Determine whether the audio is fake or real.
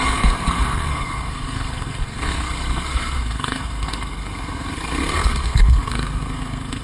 fake